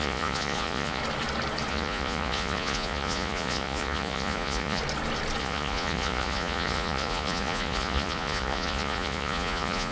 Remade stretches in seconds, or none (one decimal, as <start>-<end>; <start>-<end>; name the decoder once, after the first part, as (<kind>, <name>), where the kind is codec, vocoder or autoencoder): 0.0-1.0 (vocoder, Vocos); 1.7-4.8; 5.4-9.9